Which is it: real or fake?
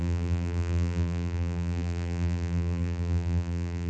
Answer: fake